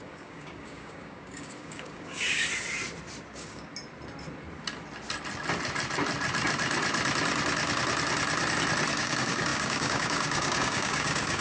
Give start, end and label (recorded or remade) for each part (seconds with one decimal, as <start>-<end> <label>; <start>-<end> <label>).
0.0-2.5 remade; 2.5-3.3 recorded; 3.3-3.7 remade; 3.7-8.9 recorded; 8.9-11.4 remade